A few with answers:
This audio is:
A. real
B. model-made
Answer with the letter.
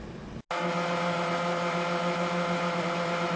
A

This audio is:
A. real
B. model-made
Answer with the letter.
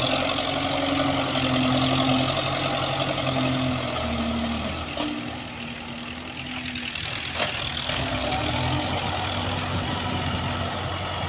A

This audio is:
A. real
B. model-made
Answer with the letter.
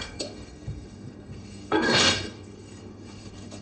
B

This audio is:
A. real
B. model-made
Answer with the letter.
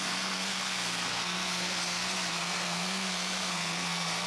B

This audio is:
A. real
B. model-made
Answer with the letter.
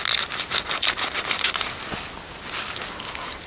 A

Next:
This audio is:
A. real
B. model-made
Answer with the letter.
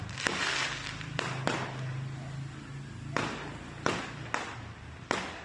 A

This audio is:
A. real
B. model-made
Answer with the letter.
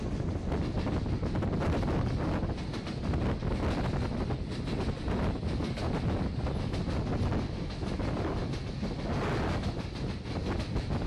A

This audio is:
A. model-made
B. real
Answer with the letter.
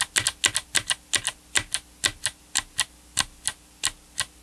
B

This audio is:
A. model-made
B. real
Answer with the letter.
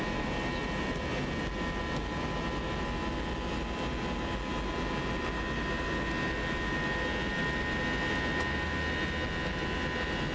B